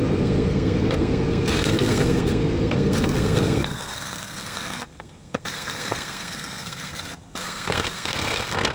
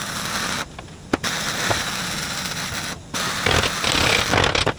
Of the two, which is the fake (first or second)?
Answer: first